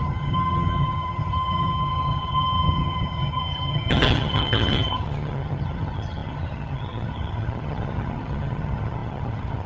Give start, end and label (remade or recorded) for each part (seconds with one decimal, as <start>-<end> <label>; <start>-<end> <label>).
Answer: 0.0-9.7 remade